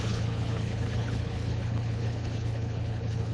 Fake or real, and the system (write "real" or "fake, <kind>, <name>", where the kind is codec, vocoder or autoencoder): fake, codec, HILCodec